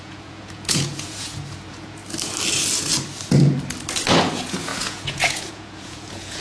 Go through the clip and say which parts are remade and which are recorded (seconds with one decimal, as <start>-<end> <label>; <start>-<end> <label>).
0.0-2.0 remade; 2.0-4.2 recorded; 4.2-6.4 remade